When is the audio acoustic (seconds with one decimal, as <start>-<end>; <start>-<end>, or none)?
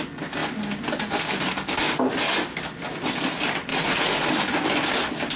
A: 0.0-3.7; 4.3-5.4